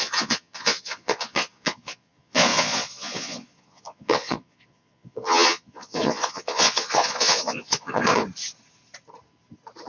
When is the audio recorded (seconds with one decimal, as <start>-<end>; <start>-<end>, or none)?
8.2-9.9